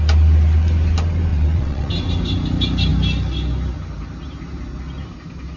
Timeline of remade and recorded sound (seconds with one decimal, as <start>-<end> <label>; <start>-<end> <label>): 0.0-1.3 recorded; 1.3-1.9 remade; 1.9-5.6 recorded